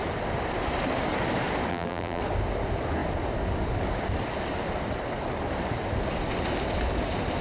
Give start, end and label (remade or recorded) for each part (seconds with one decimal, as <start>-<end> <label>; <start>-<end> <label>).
0.0-1.7 recorded; 1.7-2.2 remade; 2.2-7.4 recorded